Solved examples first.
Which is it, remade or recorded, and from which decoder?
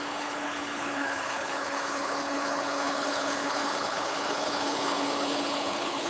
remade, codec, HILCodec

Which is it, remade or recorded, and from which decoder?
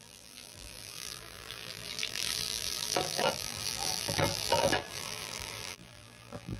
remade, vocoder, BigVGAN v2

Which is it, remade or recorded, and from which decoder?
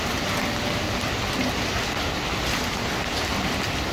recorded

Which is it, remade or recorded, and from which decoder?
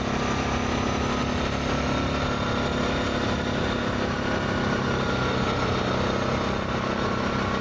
recorded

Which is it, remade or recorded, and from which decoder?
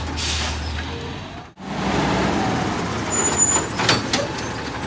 recorded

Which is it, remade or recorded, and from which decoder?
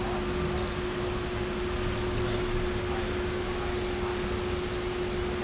recorded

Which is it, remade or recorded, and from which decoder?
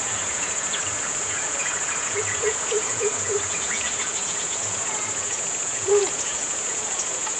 remade, vocoder, Vocos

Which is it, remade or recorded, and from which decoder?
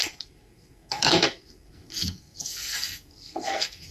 remade, codec, SNAC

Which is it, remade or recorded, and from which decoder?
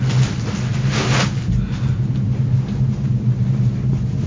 recorded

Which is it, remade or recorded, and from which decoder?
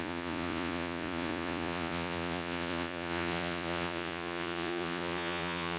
remade, vocoder, Vocos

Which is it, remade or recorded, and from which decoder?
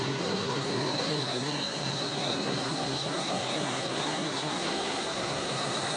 remade, codec, SNAC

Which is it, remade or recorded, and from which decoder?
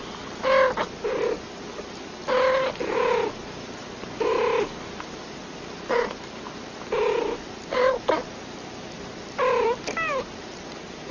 recorded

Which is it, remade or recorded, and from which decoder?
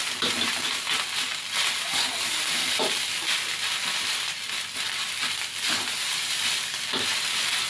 recorded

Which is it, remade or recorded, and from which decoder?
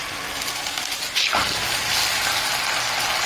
recorded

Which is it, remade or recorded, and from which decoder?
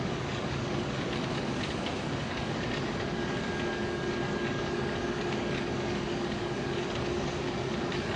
remade, codec, DAC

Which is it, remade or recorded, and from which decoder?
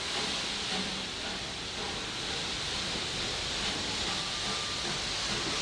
recorded